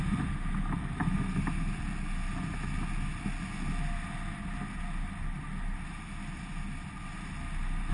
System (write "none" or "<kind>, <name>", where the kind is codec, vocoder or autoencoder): none